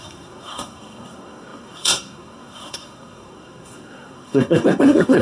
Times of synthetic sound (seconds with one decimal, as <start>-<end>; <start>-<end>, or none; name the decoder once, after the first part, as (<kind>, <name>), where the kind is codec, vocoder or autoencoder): 0.0-5.2 (codec, SNAC)